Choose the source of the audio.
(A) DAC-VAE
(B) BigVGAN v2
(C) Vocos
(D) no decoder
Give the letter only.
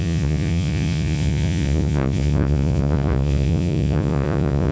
C